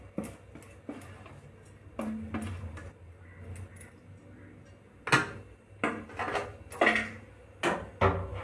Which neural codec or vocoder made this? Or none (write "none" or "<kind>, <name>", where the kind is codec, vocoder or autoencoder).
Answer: none